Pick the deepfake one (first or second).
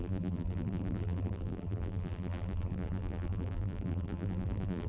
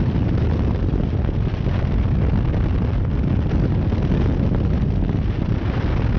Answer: first